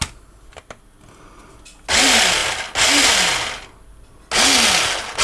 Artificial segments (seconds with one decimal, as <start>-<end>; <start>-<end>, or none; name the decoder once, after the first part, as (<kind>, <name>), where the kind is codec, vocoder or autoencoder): none